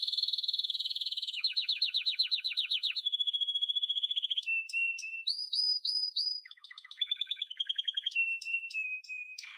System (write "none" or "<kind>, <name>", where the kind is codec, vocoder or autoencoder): autoencoder, DAC-VAE